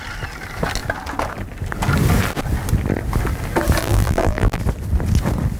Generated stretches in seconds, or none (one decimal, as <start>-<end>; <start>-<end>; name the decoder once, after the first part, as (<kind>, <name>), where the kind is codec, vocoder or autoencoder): 3.8-4.6 (vocoder, BigVGAN v2)